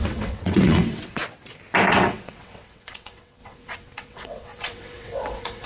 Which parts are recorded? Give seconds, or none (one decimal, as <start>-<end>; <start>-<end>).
1.2-1.9